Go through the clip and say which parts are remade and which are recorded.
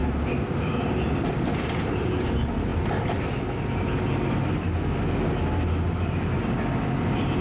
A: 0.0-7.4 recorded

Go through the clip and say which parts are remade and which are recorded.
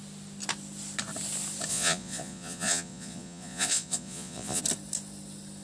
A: 0.0-1.7 recorded; 1.7-4.6 remade; 4.6-5.6 recorded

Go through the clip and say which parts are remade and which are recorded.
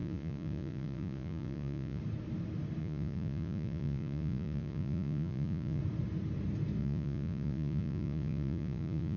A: 0.0-2.0 remade; 2.0-2.8 recorded; 2.8-5.8 remade; 5.8-6.8 recorded; 6.8-9.2 remade